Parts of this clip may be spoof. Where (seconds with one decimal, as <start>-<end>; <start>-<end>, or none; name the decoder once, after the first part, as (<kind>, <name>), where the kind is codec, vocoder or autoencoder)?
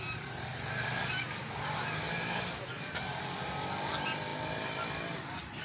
none